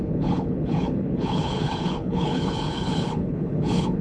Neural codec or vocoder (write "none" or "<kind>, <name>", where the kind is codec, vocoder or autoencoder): codec, HILCodec